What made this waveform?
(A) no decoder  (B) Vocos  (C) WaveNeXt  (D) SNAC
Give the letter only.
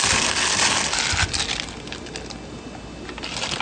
A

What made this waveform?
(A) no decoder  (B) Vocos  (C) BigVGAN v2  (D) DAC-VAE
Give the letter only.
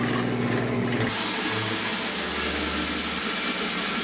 A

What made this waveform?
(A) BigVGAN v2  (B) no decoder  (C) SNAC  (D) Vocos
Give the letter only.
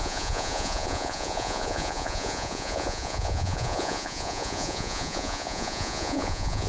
D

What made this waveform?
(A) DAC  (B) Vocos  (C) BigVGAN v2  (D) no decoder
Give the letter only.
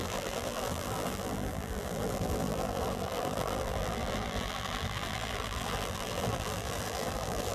C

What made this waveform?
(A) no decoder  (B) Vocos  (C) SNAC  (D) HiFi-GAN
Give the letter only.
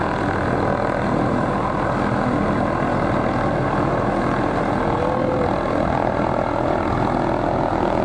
A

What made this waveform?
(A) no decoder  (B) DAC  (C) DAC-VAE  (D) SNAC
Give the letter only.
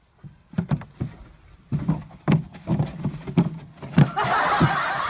A